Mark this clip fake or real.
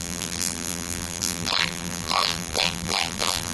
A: fake